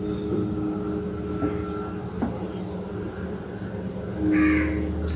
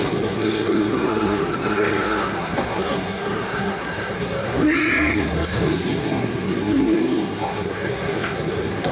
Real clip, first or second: first